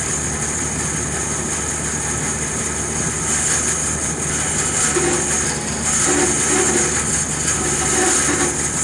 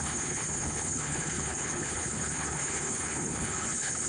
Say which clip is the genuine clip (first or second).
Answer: first